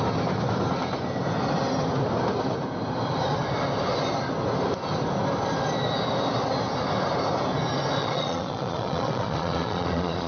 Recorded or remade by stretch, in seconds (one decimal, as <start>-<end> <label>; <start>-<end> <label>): 0.0-8.0 recorded; 8.0-10.3 remade